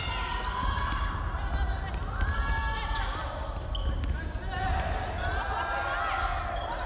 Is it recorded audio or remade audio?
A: recorded